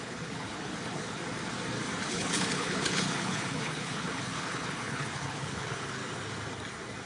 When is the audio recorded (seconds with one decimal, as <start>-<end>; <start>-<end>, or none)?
1.2-2.1; 6.0-7.1